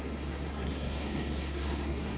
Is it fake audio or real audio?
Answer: fake